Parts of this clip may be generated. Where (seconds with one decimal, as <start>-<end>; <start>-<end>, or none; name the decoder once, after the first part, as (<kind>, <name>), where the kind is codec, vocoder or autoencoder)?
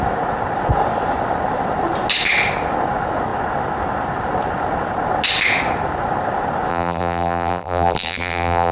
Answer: 6.7-8.7 (vocoder, BigVGAN v2)